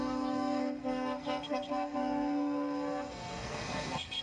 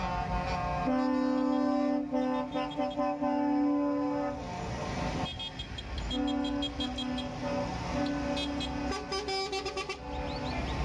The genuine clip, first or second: second